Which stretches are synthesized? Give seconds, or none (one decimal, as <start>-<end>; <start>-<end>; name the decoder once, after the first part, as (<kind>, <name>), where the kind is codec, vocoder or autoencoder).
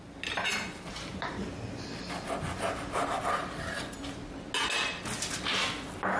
none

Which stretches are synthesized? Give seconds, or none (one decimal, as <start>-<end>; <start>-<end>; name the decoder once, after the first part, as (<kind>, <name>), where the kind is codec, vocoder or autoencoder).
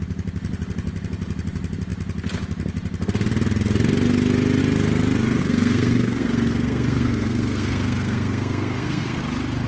5.4-9.2 (codec, SNAC)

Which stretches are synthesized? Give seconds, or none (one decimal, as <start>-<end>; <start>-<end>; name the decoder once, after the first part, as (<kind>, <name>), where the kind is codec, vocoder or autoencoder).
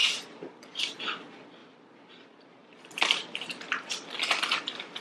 0.0-1.0 (vocoder, BigVGAN v2); 1.6-3.9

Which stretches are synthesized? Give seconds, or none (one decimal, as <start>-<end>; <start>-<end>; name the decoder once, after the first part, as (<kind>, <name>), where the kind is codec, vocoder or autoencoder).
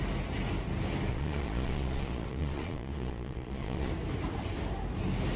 1.1-3.9 (vocoder, Vocos)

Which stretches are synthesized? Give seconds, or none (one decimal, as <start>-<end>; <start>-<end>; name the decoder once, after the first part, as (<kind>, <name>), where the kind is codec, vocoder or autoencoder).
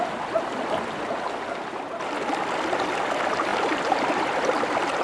3.5-5.0 (vocoder, BigVGAN v2)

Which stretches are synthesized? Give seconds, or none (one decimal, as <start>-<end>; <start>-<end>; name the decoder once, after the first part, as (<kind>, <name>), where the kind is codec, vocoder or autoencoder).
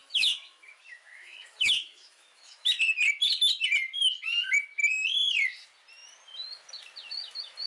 0.0-2.8 (autoencoder, DAC-VAE)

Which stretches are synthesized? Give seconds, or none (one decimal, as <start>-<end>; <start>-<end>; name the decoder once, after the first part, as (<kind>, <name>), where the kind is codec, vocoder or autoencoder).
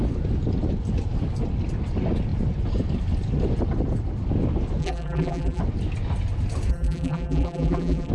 4.8-5.6 (vocoder, BigVGAN v2); 6.7-8.1